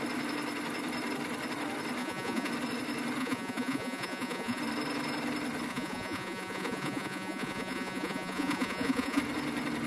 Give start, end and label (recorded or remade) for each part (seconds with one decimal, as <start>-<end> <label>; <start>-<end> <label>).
0.0-2.0 recorded; 2.0-2.5 remade; 2.5-3.2 recorded; 3.2-4.6 remade; 4.6-5.7 recorded; 5.7-9.2 remade; 9.2-9.9 recorded